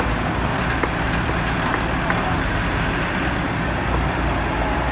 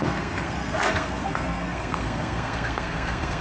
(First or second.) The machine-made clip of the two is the second